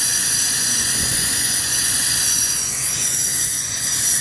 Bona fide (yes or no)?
no